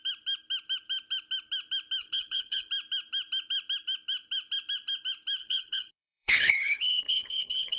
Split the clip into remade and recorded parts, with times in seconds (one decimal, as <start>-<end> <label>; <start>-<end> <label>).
0.0-2.0 recorded; 2.0-2.7 remade; 2.7-5.4 recorded; 5.4-7.8 remade